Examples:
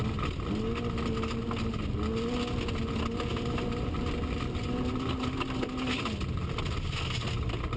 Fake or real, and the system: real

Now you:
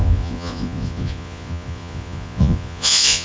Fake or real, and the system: fake, vocoder, Vocos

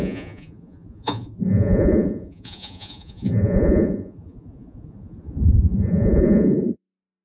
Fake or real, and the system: fake, vocoder, Vocos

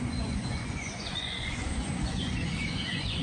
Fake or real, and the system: fake, vocoder, Vocos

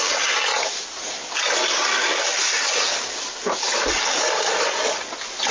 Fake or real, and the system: real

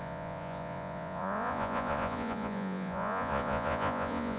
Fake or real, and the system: fake, vocoder, Vocos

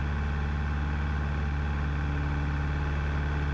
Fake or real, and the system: real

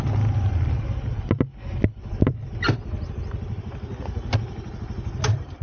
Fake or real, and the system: real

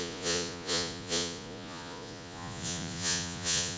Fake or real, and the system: fake, vocoder, Vocos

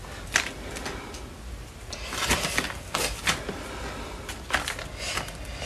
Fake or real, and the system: real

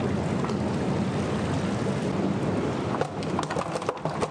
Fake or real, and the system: real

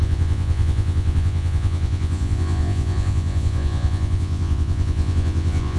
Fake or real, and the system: fake, vocoder, Vocos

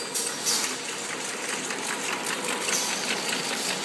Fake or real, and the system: real